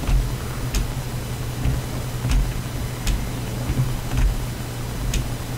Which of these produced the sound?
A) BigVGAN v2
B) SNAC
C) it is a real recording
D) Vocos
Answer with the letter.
C